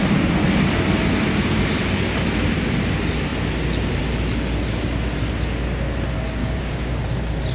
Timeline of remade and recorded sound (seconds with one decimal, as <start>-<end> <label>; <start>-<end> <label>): 0.0-6.4 recorded; 6.4-7.0 remade; 7.0-7.5 recorded